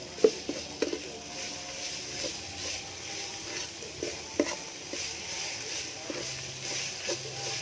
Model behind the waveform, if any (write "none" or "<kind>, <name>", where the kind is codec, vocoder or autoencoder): none